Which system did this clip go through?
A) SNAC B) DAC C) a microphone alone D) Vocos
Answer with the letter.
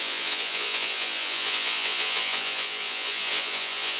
D